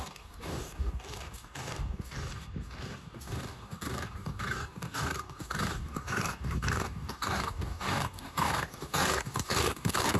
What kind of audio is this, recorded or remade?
remade